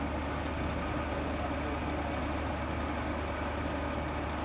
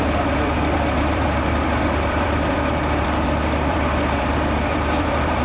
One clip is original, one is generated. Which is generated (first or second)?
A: second